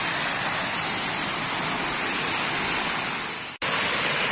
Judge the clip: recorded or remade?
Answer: recorded